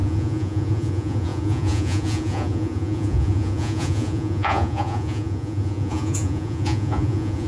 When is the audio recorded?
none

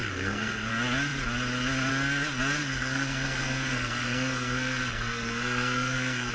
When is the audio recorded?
0.7-2.6

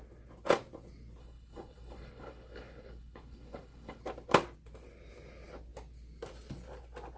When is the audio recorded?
0.0-1.2; 4.0-7.2

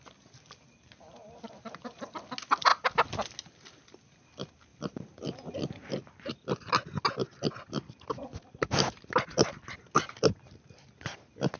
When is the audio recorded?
0.0-11.6

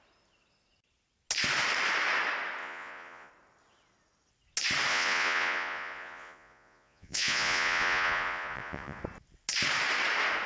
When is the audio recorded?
0.0-2.6; 3.3-4.9; 9.0-10.5

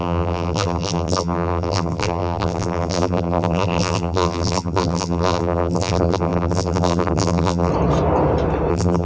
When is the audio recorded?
7.7-8.7

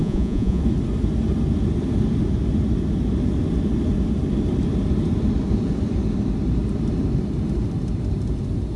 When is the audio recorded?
0.6-8.8